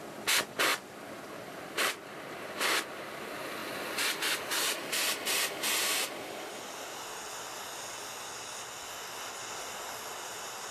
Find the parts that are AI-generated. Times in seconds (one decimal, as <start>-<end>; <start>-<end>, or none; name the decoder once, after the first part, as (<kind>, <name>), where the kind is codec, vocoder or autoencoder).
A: 0.7-2.2 (vocoder, BigVGAN v2)